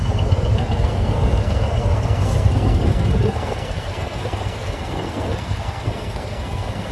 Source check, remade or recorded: remade